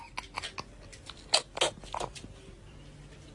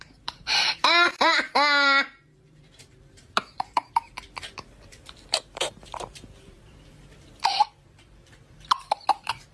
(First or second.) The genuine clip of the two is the first